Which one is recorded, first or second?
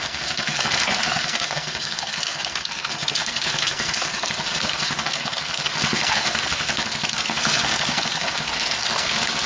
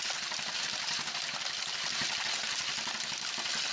second